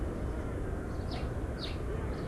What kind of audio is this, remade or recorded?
recorded